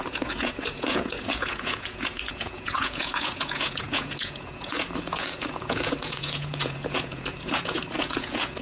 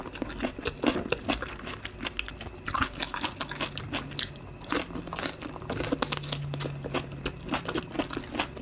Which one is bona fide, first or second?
second